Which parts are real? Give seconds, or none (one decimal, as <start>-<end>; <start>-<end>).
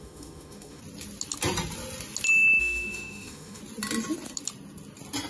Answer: 0.8-2.6; 3.6-5.3